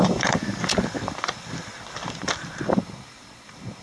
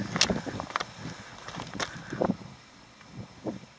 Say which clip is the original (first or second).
second